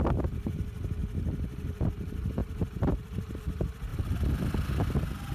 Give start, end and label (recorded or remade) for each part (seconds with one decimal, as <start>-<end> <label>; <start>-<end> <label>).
0.0-1.0 recorded; 1.0-1.8 remade; 1.8-5.3 recorded